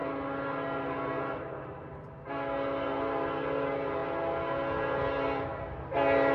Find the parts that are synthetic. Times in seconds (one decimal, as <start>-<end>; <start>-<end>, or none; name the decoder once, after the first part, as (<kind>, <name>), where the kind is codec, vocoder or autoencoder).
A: none